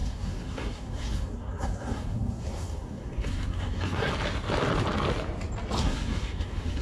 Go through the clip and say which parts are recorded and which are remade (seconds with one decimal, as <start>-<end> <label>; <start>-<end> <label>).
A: 0.0-4.1 remade; 4.1-5.8 recorded; 5.8-6.8 remade